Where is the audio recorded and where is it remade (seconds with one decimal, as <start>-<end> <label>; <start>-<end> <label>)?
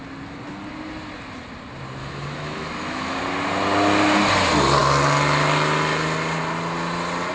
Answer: 0.0-2.0 recorded; 2.0-3.2 remade; 3.2-7.3 recorded